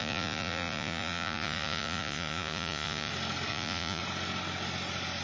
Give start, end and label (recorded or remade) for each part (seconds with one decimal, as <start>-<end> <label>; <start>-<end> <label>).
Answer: 0.0-3.1 remade; 3.1-3.5 recorded; 3.5-4.0 remade; 4.0-5.2 recorded